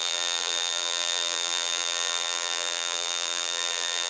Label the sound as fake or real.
fake